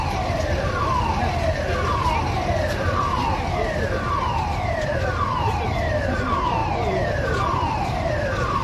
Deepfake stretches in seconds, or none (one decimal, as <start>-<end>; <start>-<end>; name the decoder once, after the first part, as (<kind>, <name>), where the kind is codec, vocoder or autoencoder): 6.6-8.1 (vocoder, BigVGAN v2)